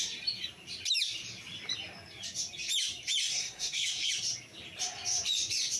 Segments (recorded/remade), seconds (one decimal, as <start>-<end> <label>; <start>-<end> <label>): 0.0-3.2 recorded; 3.2-4.1 remade; 4.1-5.8 recorded